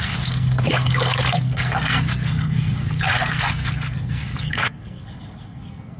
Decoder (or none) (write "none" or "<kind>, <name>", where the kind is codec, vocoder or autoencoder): codec, SNAC